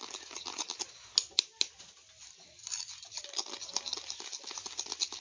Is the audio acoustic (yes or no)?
yes